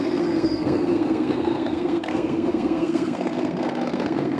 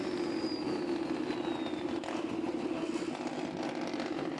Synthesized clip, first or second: first